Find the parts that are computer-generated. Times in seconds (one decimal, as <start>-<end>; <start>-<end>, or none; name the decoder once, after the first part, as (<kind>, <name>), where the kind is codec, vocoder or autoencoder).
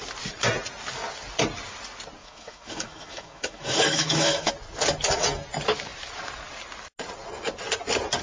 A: 2.2-4.5 (autoencoder, DAC-VAE)